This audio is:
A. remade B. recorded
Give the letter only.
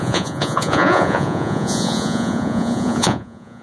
A